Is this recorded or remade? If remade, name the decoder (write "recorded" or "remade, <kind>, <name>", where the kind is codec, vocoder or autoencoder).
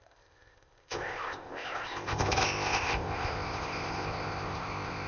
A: remade, codec, ZipCodec